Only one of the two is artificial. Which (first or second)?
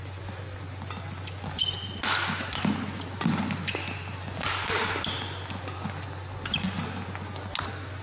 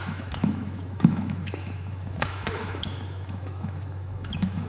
second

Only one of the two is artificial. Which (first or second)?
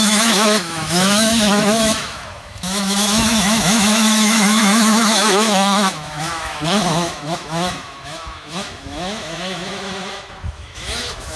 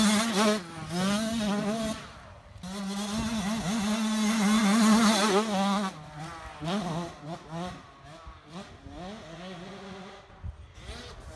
first